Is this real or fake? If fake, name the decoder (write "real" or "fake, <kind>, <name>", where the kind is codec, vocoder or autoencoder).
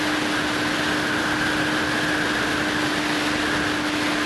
real